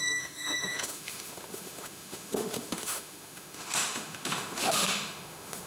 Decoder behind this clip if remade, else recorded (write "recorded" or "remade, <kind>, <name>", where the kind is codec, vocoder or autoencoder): remade, autoencoder, DAC-VAE